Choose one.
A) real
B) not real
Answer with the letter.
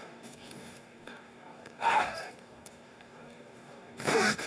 B